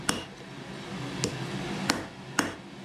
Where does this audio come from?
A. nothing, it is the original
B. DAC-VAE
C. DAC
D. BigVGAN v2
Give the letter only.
A